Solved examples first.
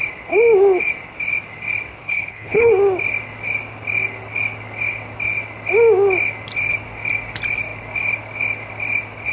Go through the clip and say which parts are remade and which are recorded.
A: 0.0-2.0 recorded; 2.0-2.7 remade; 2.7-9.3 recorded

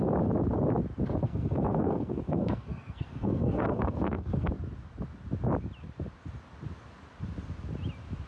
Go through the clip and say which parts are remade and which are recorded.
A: 0.0-1.2 recorded; 1.2-4.5 remade; 4.5-8.3 recorded

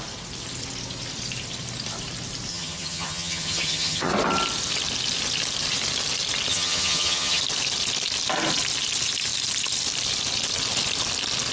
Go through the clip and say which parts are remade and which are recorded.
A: 0.0-2.5 recorded; 2.5-4.1 remade; 4.1-6.5 recorded; 6.5-7.4 remade; 7.4-11.5 recorded

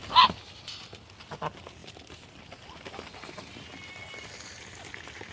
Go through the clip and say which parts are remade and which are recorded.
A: 0.0-5.3 recorded

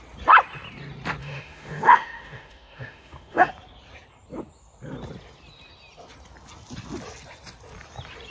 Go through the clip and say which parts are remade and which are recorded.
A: 0.0-1.2 recorded; 1.2-3.5 remade; 3.5-8.3 recorded

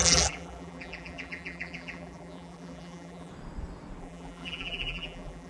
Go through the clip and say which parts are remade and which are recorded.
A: 0.0-3.3 remade; 3.3-4.0 recorded; 4.0-5.5 remade